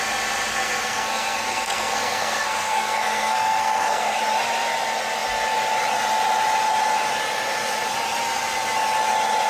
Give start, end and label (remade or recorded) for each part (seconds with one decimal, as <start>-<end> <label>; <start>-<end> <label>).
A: 0.0-0.5 recorded; 0.5-4.2 remade; 4.2-9.5 recorded